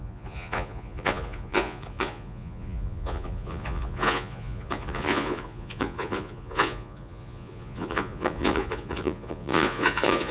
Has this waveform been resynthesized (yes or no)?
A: yes